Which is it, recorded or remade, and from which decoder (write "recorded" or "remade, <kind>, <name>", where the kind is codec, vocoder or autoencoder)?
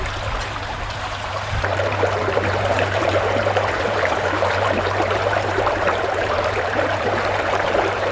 remade, vocoder, BigVGAN v2